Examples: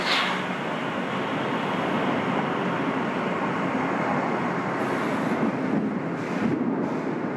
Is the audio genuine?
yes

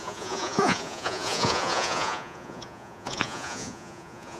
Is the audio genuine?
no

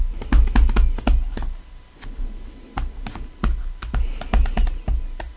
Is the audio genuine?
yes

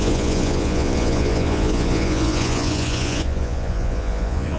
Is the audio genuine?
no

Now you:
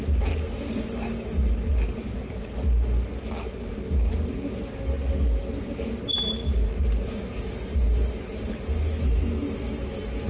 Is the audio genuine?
yes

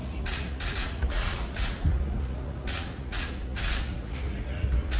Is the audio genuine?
no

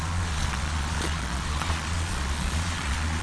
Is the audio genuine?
no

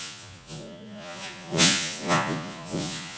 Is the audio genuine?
no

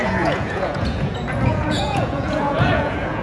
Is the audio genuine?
no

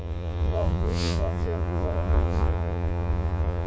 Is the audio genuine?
no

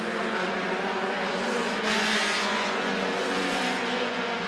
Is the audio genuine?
no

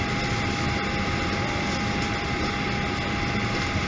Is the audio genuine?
yes